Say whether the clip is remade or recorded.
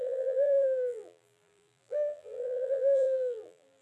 remade